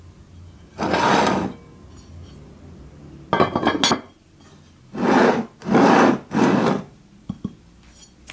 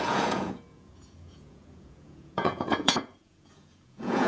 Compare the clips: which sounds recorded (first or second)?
first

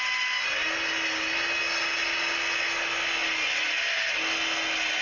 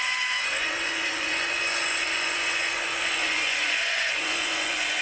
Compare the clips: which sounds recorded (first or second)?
first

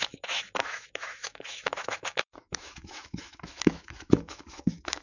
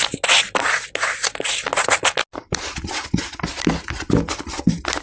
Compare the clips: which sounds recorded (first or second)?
second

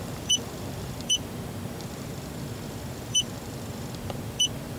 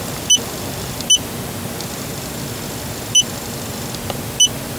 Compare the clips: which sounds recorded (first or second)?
second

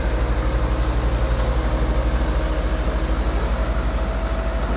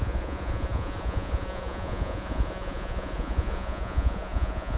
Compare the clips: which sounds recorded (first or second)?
first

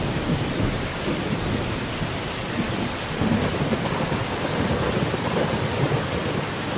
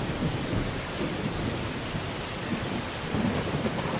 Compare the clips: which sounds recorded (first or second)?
first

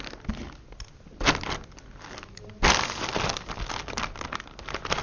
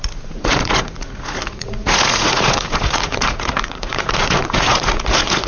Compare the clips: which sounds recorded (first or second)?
first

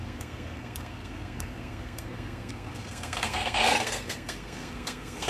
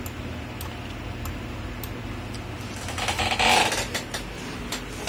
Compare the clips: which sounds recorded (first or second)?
second